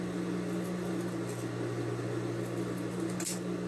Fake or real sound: real